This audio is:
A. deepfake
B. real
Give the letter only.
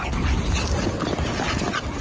B